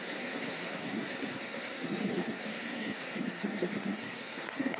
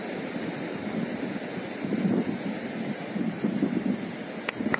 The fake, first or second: first